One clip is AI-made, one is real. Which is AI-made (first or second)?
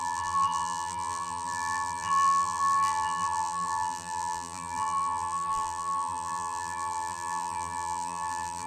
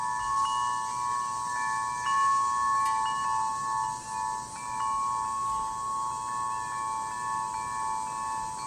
first